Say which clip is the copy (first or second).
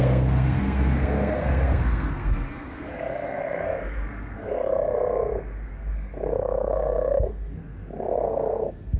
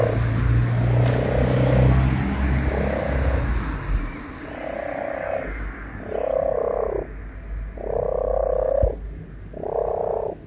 first